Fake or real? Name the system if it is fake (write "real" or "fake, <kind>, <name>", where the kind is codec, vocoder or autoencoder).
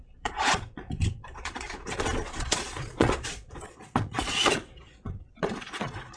fake, vocoder, Vocos